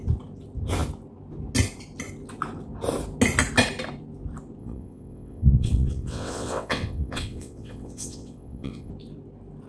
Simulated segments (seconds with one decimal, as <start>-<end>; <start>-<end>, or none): 4.6-8.9